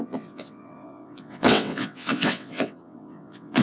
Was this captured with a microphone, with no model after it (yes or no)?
no